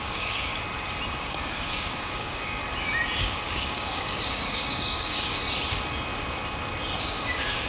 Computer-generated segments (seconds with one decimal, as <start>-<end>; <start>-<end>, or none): 0.0-0.5; 1.2-2.6; 3.2-5.4; 7.0-7.7